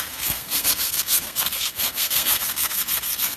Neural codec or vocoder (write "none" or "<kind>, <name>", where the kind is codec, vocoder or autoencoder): codec, SNAC